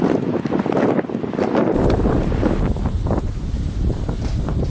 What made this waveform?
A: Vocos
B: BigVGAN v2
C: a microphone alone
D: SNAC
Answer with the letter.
C